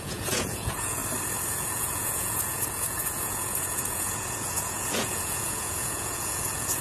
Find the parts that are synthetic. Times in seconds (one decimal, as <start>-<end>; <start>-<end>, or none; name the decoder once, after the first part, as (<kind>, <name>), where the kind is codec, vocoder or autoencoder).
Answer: 0.0-1.0 (vocoder, Vocos); 1.5-6.8